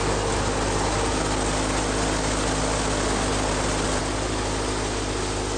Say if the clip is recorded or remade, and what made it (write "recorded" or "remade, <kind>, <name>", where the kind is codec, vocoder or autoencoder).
recorded